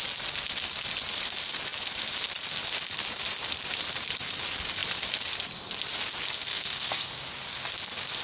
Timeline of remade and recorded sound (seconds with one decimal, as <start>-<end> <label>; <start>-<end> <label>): 0.0-6.5 recorded; 6.5-7.1 remade; 7.1-8.2 recorded